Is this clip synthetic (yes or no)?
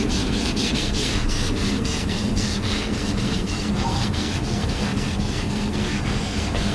yes